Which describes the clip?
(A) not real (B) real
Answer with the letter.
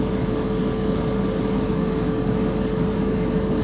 A